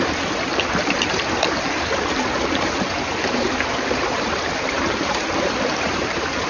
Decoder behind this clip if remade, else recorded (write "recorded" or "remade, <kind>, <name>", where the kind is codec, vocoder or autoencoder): remade, vocoder, BigVGAN v2